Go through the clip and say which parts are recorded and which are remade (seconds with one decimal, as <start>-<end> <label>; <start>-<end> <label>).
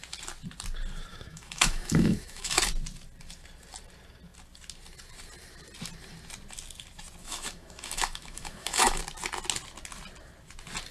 0.0-1.1 recorded; 1.1-2.6 remade; 2.6-7.2 recorded; 7.2-9.0 remade; 9.0-10.9 recorded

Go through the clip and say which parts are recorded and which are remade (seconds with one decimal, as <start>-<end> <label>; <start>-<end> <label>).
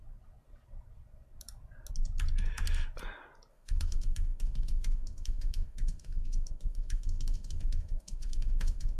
0.0-3.5 recorded; 3.5-9.0 remade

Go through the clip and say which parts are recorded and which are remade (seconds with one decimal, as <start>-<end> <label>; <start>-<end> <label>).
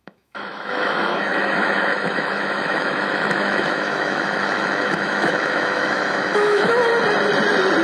0.0-6.9 remade; 6.9-7.8 recorded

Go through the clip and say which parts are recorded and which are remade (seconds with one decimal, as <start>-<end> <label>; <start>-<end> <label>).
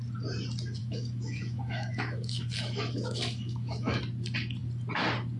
0.0-0.8 recorded; 0.8-4.0 remade; 4.0-5.4 recorded